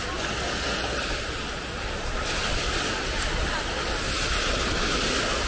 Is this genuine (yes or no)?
yes